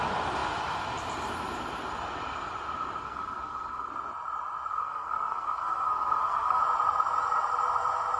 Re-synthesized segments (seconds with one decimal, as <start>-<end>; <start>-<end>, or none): 3.0-3.9; 4.7-6.6